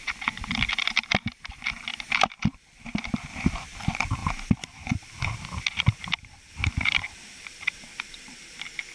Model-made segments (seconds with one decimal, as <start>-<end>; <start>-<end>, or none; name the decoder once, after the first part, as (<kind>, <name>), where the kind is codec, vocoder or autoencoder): 0.0-8.9 (vocoder, BigVGAN v2)